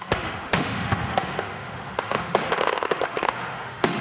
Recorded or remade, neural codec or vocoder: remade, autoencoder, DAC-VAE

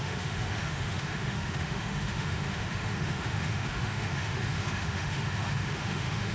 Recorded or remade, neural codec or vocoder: remade, autoencoder, DAC-VAE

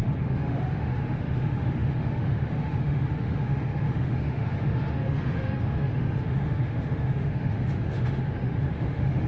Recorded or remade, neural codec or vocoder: remade, autoencoder, DAC-VAE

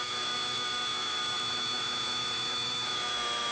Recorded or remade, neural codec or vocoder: remade, autoencoder, DAC-VAE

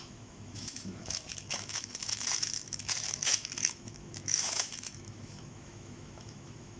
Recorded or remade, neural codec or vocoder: remade, autoencoder, DAC-VAE